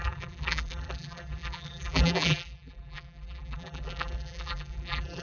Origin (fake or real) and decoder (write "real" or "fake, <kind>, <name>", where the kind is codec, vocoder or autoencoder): fake, vocoder, BigVGAN v2